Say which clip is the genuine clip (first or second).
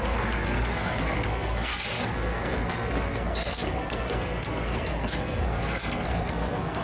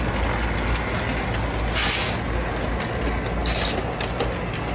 second